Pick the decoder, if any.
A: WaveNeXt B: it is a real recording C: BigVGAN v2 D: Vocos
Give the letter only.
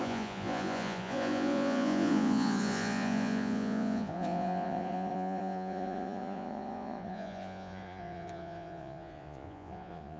D